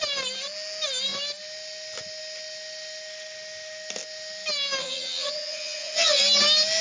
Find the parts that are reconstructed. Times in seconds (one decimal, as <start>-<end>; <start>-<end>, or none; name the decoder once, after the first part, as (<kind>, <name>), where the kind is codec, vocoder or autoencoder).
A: 4.8-6.2 (vocoder, HiFi-GAN)